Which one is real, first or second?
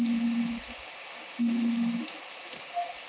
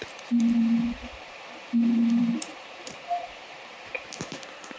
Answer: first